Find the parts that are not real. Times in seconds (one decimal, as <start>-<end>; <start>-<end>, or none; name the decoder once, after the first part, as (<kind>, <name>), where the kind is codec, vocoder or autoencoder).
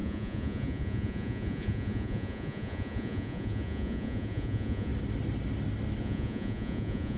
0.0-4.9 (vocoder, Vocos); 6.0-7.2